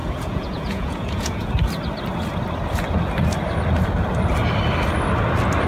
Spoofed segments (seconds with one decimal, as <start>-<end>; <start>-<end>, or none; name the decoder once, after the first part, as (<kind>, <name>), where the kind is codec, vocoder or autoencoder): 0.0-1.5 (vocoder, Vocos)